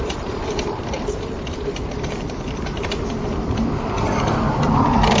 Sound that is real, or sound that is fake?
fake